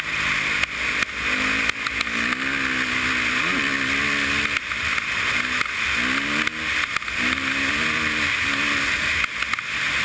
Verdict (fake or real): real